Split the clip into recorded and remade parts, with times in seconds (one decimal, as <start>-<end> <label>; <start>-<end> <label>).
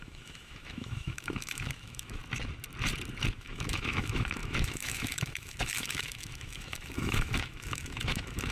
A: 0.0-2.2 remade; 2.2-3.3 recorded; 3.3-8.5 remade